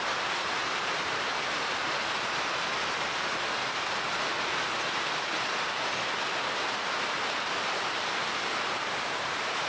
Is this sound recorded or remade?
recorded